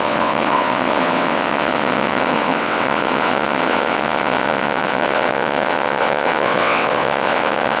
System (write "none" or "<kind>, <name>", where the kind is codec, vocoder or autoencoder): vocoder, WaveNeXt